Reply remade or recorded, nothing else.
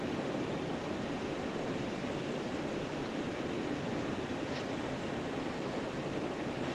recorded